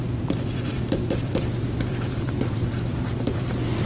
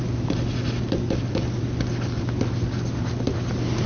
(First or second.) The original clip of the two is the second